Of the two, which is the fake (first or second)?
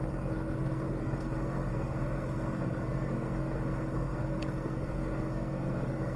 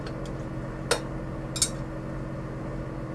first